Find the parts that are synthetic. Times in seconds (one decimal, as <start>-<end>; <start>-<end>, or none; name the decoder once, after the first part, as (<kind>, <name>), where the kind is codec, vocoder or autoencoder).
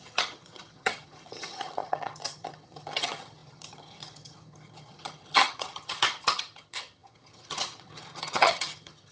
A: 0.0-9.1 (vocoder, HiFi-GAN)